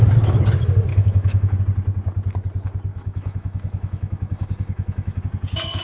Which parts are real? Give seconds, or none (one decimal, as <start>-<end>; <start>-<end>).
0.0-0.9; 1.6-2.9; 5.2-5.8